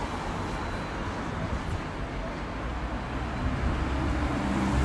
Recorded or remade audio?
recorded